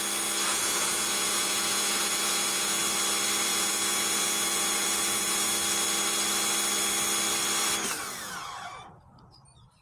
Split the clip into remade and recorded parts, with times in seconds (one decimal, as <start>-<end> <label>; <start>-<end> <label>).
0.0-0.5 recorded; 0.5-2.8 remade; 2.8-3.5 recorded; 3.5-5.5 remade; 5.5-8.0 recorded; 8.0-9.0 remade; 9.0-9.8 recorded